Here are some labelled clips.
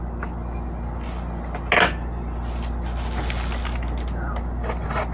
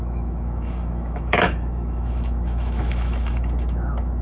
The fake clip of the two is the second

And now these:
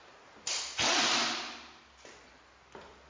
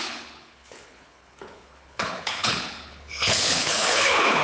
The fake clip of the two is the second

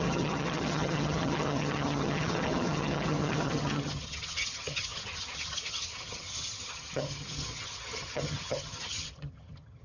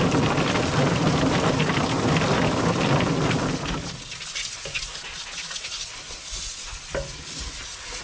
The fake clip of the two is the first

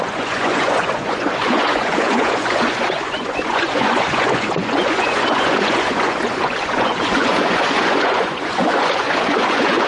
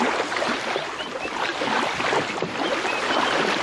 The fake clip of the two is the first